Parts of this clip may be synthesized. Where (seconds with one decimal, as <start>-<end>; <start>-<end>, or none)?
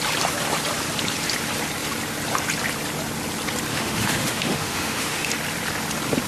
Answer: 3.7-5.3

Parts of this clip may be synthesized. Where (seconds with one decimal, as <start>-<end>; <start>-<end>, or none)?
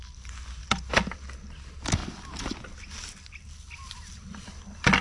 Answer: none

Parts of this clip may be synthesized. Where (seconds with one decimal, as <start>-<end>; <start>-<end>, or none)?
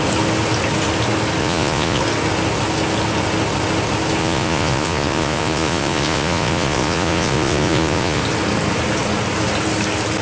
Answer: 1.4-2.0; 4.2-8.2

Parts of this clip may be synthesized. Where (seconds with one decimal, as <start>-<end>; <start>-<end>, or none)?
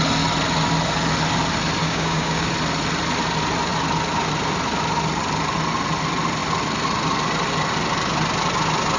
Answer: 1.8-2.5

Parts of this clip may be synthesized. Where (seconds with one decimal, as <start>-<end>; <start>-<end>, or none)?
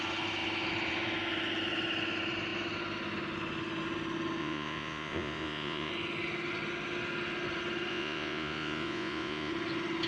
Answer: 4.4-5.9; 7.9-9.5